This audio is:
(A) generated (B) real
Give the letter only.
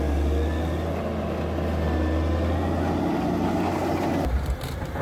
B